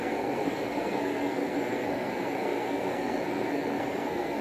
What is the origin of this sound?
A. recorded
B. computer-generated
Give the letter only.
B